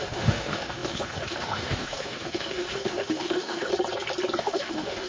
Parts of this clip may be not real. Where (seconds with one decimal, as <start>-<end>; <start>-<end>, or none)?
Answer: 0.0-3.7; 4.4-5.1